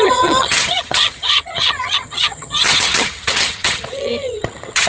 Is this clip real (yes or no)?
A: no